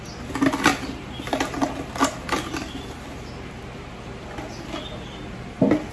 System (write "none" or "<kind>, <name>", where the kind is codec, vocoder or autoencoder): none